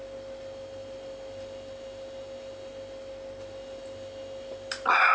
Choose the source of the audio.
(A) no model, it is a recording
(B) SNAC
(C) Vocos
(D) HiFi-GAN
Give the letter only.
A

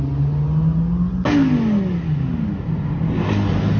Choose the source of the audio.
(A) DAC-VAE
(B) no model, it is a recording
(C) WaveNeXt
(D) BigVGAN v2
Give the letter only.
B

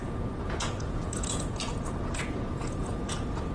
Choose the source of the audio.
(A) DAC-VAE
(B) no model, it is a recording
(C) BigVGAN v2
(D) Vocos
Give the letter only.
D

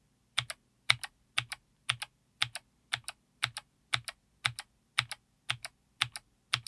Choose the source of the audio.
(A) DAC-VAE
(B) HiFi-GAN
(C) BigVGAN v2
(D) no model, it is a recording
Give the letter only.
D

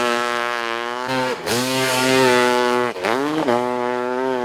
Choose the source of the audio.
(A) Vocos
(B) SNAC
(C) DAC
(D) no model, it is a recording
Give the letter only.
C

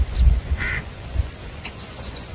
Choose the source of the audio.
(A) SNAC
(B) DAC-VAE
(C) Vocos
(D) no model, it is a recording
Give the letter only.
C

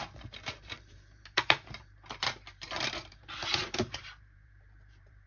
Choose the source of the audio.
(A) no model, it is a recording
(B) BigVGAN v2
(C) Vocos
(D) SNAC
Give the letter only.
B